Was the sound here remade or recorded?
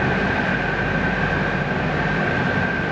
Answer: recorded